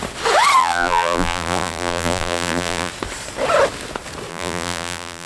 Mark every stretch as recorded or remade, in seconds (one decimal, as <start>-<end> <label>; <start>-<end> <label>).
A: 0.0-0.6 recorded; 0.6-2.9 remade; 2.9-4.3 recorded; 4.3-5.3 remade